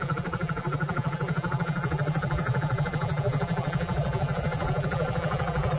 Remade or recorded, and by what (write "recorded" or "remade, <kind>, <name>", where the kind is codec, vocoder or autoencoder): remade, vocoder, BigVGAN v2